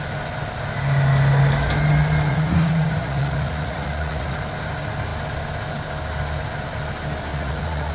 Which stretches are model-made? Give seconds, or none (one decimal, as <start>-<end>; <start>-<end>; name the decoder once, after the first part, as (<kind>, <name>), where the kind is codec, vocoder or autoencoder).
2.3-4.4 (vocoder, Vocos); 7.3-7.9